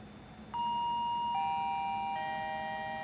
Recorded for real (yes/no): yes